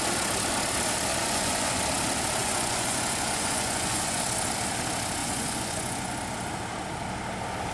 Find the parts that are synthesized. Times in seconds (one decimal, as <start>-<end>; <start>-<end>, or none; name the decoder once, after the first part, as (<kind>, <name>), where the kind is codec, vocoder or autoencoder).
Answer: 1.1-1.8 (vocoder, Vocos); 2.4-4.2; 5.2-6.2